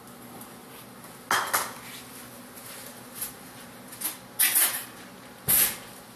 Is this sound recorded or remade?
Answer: recorded